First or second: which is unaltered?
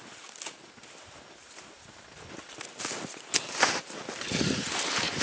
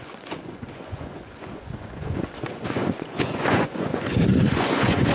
first